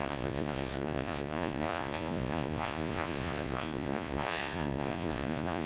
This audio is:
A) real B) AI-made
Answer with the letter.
B